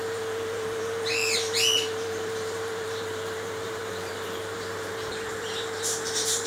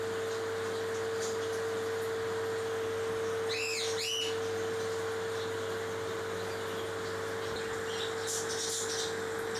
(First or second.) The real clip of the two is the second